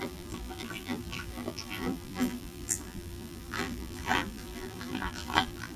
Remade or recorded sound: remade